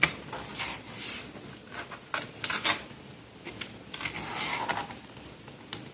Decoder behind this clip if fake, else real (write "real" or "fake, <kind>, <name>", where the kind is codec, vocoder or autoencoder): real